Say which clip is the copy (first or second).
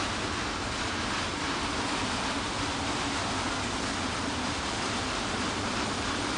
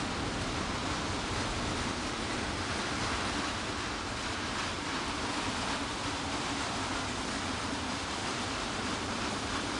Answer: second